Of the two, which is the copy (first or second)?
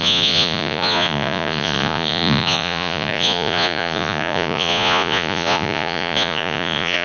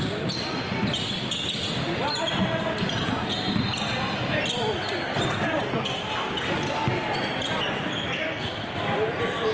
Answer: first